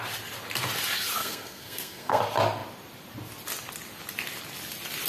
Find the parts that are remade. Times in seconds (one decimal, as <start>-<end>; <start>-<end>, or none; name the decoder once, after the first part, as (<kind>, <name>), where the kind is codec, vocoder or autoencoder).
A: 1.2-2.2 (codec, SNAC)